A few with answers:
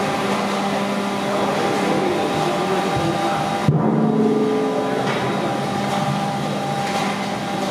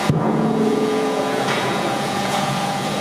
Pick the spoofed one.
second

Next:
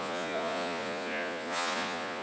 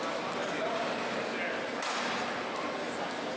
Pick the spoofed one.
first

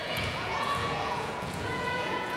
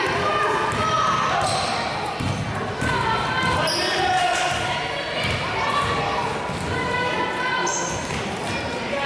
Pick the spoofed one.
first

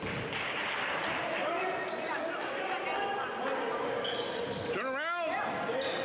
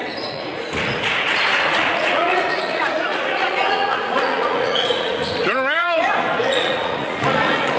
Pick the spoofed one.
second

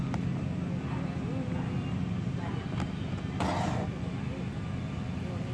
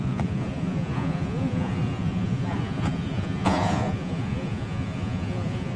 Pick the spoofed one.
second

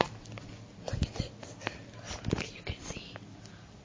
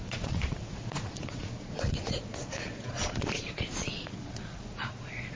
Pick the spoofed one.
second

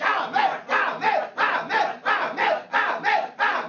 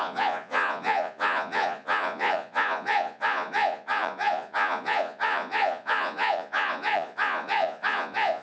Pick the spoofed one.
second